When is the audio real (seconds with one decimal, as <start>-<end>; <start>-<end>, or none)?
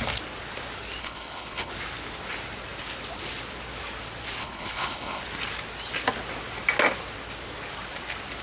0.0-1.0; 1.7-4.4; 5.2-8.4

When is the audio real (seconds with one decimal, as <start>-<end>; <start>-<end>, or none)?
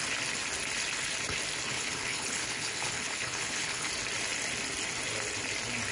0.0-1.7; 3.9-5.9